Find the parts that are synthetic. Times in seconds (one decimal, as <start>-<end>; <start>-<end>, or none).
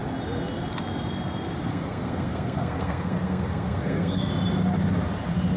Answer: 1.7-4.3